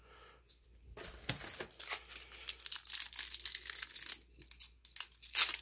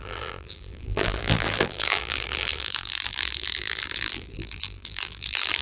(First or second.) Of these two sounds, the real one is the first